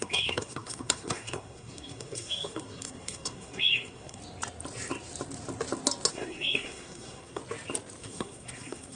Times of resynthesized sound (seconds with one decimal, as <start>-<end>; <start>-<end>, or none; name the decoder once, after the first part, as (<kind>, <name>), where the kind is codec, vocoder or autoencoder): 0.0-4.2 (codec, SNAC); 6.1-7.4; 8.0-9.0